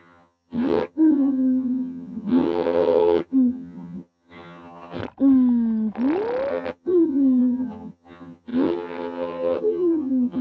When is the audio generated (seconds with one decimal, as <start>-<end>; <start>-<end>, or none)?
0.0-5.0; 6.5-10.4